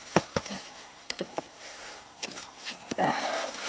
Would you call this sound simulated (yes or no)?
yes